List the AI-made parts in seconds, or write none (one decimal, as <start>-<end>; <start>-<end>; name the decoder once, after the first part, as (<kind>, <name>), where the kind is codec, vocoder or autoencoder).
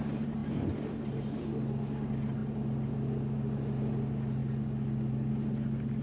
none